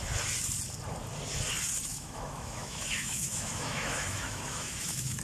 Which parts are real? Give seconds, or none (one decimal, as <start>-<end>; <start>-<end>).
0.0-1.9